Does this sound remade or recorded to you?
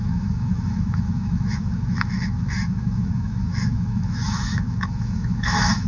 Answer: remade